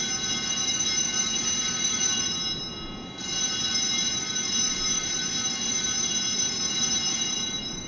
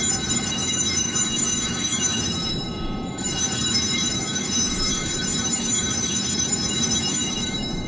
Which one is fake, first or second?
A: second